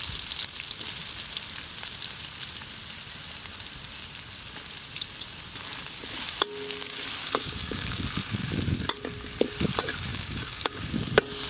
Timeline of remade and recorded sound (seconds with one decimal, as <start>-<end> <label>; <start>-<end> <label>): 0.0-7.2 recorded; 7.2-8.0 remade; 8.0-10.1 recorded; 10.1-10.9 remade; 10.9-11.5 recorded